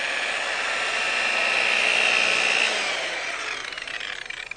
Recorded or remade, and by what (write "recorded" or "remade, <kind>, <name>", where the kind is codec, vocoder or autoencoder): recorded